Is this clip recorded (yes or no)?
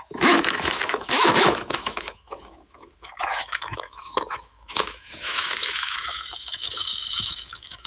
no